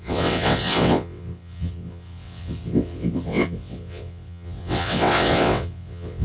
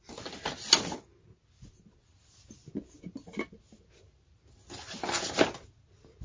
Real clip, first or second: second